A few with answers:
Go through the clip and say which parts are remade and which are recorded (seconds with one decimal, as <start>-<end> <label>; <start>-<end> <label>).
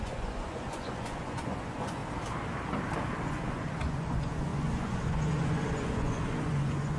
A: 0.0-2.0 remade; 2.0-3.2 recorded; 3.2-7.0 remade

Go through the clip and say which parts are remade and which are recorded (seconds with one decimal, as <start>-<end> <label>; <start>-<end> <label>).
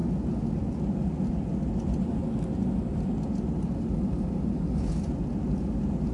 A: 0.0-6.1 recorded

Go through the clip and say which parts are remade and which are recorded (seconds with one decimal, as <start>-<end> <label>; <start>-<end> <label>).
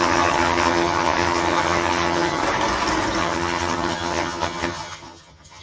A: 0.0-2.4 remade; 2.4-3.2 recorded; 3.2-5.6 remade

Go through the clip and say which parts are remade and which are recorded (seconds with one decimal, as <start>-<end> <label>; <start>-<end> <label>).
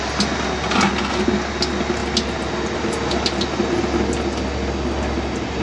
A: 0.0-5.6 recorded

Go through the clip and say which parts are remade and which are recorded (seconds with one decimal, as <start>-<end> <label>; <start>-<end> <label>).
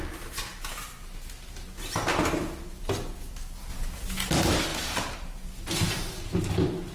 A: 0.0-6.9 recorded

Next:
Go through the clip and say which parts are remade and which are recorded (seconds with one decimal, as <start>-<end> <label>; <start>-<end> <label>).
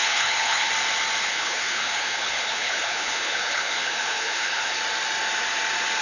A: 0.0-0.7 remade; 0.7-1.2 recorded; 1.2-4.8 remade; 4.8-6.0 recorded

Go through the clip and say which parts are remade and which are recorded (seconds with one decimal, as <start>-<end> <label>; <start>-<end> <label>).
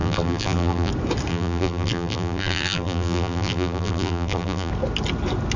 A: 0.0-0.9 remade; 0.9-1.3 recorded; 1.3-4.7 remade; 4.7-5.6 recorded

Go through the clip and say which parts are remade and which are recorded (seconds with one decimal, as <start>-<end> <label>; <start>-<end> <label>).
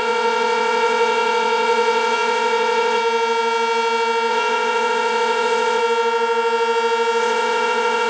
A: 0.0-3.0 remade; 3.0-4.3 recorded; 4.3-5.8 remade; 5.8-7.2 recorded; 7.2-8.1 remade